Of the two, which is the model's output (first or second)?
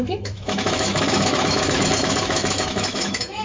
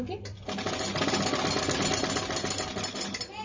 first